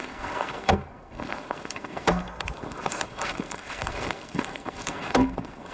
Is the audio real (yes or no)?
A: no